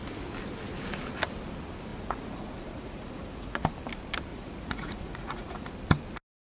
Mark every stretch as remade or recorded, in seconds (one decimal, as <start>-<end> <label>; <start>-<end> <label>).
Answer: 0.0-1.9 recorded; 1.9-3.6 remade; 3.6-4.3 recorded; 4.3-5.7 remade; 5.7-6.5 recorded